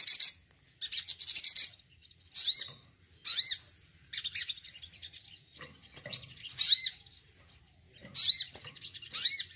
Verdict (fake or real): real